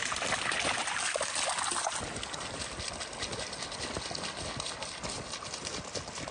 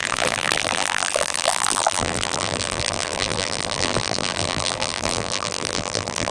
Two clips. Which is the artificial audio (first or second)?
second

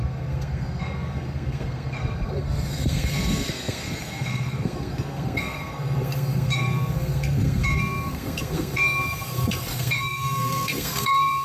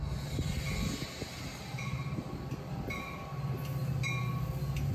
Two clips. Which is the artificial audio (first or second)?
first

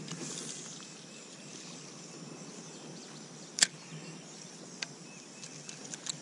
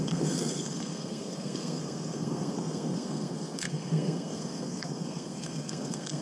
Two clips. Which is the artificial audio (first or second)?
second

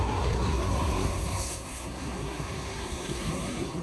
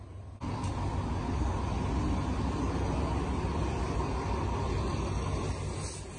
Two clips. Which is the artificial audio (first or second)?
first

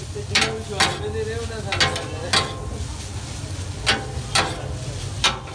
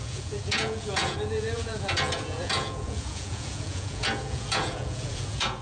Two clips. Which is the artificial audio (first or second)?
second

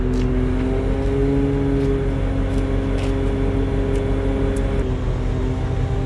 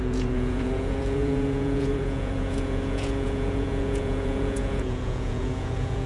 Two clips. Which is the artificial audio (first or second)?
second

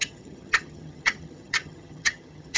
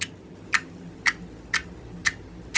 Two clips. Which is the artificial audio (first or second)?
first